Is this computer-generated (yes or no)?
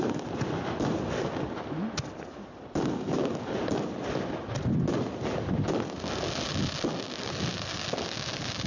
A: no